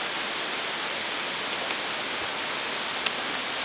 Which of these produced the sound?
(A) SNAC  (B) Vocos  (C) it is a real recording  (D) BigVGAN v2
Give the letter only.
C